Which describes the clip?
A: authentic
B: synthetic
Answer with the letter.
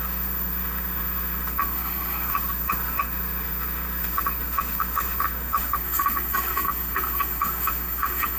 B